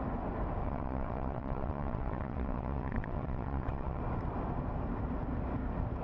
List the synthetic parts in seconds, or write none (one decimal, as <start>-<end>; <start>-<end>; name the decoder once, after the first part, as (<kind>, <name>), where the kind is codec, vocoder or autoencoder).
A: 0.6-4.0 (vocoder, WaveNeXt)